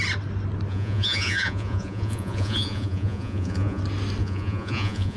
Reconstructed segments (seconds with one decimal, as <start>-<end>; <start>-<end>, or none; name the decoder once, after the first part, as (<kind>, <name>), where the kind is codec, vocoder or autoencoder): 0.7-3.8 (vocoder, Vocos); 4.2-5.2